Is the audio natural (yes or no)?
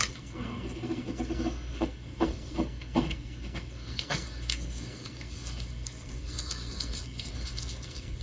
no